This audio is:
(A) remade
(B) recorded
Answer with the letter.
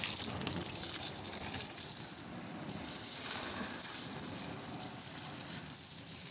A